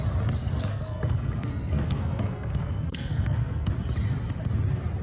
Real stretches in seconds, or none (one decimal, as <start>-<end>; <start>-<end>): 0.0-0.7; 3.7-5.0